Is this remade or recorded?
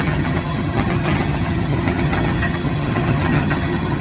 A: remade